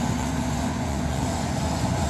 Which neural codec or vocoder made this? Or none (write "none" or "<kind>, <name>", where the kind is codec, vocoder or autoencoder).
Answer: vocoder, Vocos